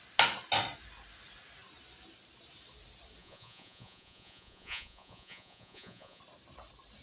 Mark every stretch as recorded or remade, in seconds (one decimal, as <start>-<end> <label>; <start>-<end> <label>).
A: 0.0-3.2 recorded; 3.2-6.2 remade; 6.2-7.0 recorded